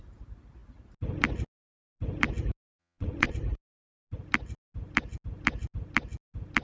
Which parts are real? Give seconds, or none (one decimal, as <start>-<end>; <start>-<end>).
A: 0.0-2.8; 3.3-6.6